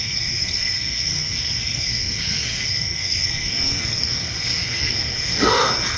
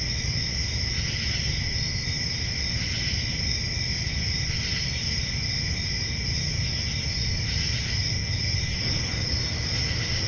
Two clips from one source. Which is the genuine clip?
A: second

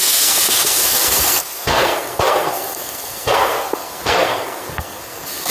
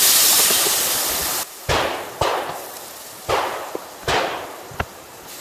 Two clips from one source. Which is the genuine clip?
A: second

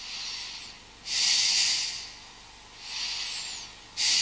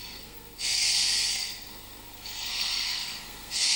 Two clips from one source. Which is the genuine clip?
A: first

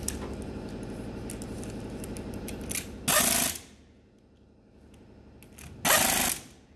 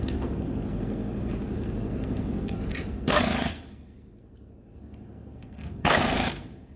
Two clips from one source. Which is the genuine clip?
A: first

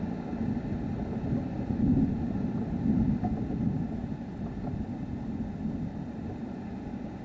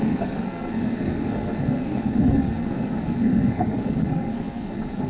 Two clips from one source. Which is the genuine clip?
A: first